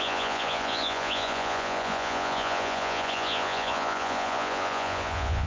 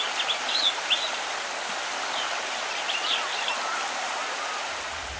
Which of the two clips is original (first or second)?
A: second